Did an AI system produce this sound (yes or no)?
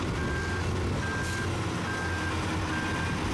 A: no